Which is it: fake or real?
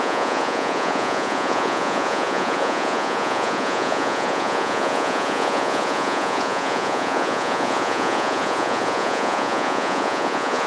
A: fake